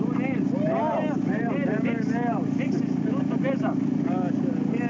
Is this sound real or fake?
real